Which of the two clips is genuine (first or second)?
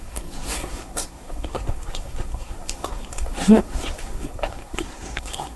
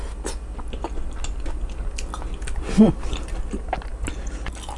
second